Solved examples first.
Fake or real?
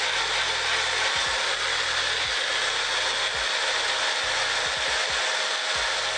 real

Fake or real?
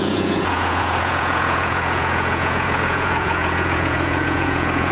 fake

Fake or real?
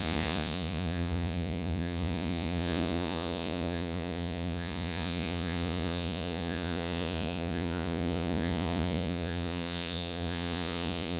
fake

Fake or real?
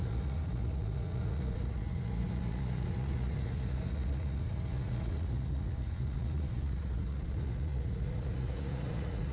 fake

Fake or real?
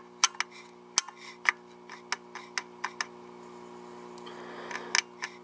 real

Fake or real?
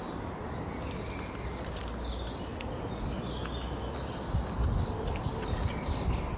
real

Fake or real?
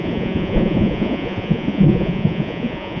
fake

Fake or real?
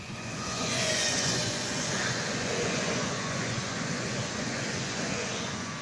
fake